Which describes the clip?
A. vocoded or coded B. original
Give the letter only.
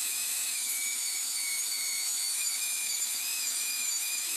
A